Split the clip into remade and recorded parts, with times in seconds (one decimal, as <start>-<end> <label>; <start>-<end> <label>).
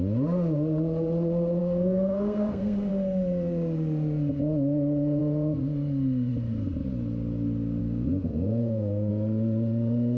0.0-1.6 recorded; 1.6-2.9 remade; 2.9-7.8 recorded; 7.8-9.1 remade; 9.1-10.2 recorded